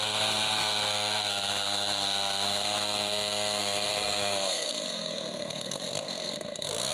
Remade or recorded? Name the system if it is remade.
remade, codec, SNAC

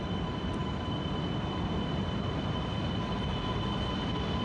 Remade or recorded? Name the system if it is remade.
recorded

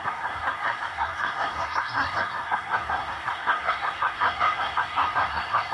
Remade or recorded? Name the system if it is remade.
remade, codec, SNAC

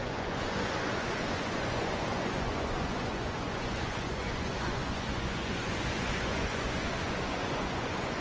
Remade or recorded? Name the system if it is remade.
remade, vocoder, Vocos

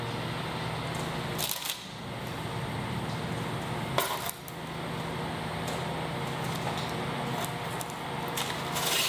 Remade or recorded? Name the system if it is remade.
recorded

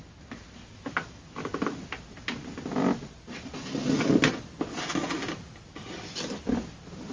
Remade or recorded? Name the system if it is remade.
recorded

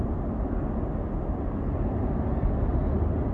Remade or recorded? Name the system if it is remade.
recorded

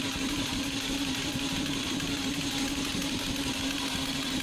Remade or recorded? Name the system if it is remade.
remade, vocoder, BigVGAN v2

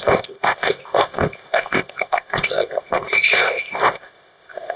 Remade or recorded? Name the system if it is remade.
remade, codec, ZipCodec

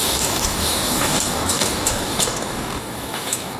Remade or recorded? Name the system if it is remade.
remade, codec, DAC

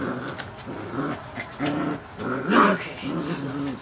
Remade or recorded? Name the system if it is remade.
recorded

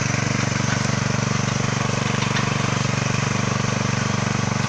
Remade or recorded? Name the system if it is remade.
remade, vocoder, BigVGAN v2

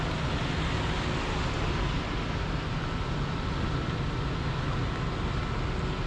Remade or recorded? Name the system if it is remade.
recorded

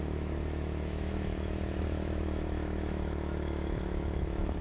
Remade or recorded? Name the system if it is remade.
remade, autoencoder, DAC-VAE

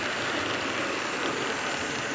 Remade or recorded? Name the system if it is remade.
recorded